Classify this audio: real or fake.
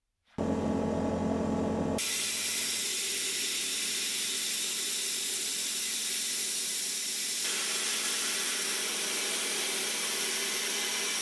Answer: real